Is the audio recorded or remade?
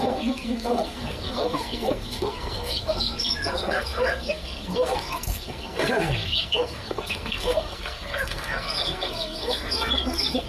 remade